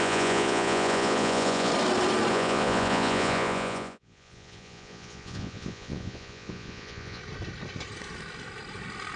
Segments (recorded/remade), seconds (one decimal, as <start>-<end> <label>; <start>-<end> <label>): 0.0-1.7 remade; 1.7-2.3 recorded; 2.3-7.2 remade; 7.2-9.2 recorded